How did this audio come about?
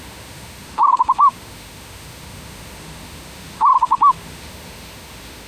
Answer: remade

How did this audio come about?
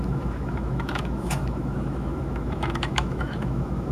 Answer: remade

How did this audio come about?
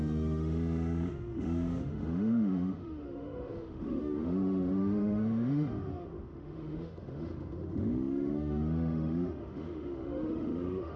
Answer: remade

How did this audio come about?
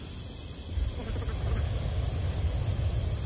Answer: recorded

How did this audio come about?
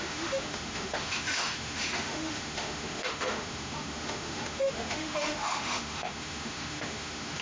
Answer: remade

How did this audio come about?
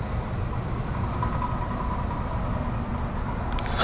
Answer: recorded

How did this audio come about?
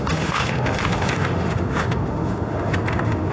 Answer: remade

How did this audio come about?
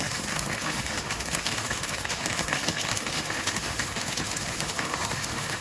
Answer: remade